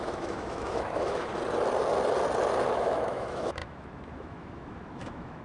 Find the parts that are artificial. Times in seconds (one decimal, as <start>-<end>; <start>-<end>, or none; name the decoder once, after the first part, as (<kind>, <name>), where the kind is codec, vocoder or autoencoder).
0.0-1.3 (autoencoder, DAC-VAE); 2.7-5.4